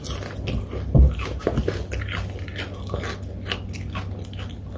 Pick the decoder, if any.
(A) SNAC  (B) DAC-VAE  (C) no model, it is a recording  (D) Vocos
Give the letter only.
C